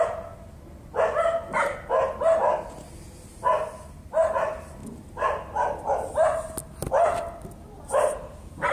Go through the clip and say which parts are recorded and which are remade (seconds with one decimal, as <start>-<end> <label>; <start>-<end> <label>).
0.0-8.7 recorded